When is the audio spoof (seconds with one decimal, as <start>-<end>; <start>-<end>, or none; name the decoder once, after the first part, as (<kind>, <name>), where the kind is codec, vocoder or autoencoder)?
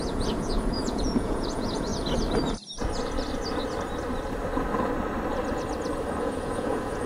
0.0-1.9 (vocoder, Vocos); 6.2-7.1